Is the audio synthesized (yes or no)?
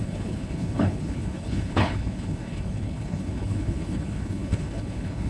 yes